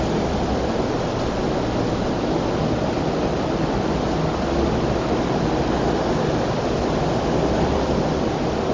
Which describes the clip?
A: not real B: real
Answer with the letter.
B